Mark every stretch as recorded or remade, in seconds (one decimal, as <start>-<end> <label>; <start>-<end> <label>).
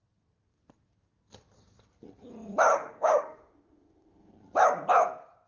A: 0.0-2.7 recorded; 2.7-4.3 remade; 4.3-5.5 recorded